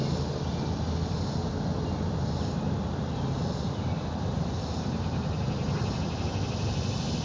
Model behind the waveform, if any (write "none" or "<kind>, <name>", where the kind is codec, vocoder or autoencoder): none